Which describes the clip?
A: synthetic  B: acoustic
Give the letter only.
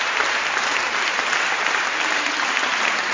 B